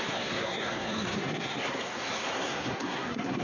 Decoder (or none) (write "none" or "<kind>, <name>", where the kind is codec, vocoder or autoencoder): codec, SNAC